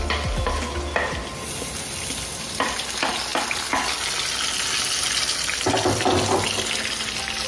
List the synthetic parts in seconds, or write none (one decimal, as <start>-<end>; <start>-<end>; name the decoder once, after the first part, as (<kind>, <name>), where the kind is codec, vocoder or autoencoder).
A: none